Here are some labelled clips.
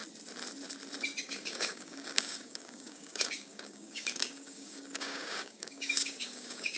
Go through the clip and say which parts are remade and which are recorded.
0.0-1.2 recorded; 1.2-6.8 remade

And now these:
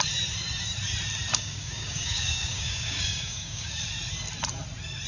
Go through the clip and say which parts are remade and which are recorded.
0.0-1.3 recorded; 1.3-3.8 remade; 3.8-5.1 recorded

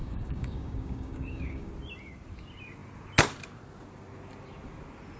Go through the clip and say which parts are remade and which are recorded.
0.0-1.7 remade; 1.7-5.2 recorded